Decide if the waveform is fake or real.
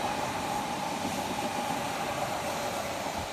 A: real